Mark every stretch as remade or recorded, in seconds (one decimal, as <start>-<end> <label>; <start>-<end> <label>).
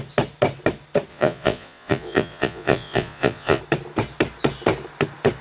0.0-1.1 recorded; 1.1-3.6 remade; 3.6-5.4 recorded